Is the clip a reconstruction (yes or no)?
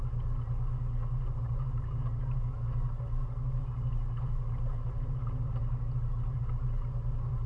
no